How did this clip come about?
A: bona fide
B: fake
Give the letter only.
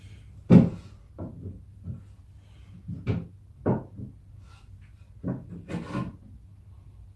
A